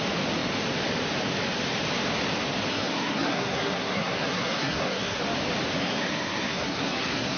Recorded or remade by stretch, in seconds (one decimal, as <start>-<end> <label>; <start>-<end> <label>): 0.0-2.7 recorded; 2.7-5.2 remade; 5.2-5.8 recorded; 5.8-7.4 remade